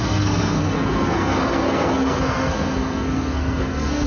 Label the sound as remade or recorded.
remade